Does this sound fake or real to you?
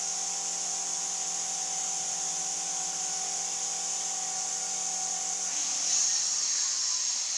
real